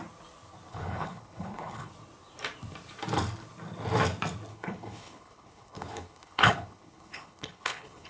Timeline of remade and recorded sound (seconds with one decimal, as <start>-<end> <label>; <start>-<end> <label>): 0.0-0.7 recorded; 0.7-1.9 remade; 1.9-4.5 recorded; 4.5-8.1 remade